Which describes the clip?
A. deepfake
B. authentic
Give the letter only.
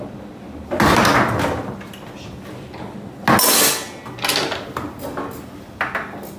B